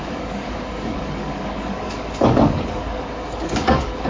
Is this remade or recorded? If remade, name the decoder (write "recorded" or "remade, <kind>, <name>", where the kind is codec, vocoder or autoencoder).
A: remade, codec, DAC